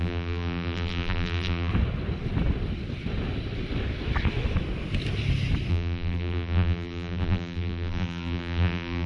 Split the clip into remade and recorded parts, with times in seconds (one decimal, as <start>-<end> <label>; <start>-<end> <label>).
0.0-1.7 remade; 1.7-5.7 recorded; 5.7-9.1 remade